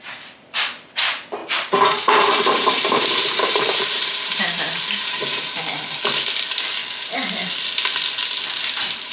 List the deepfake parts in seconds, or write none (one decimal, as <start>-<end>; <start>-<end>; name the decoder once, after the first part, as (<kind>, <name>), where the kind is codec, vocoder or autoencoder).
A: 1.4-5.6 (vocoder, BigVGAN v2)